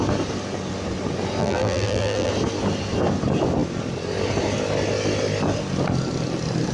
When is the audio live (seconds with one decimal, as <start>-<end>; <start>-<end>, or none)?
0.0-1.4; 2.3-6.7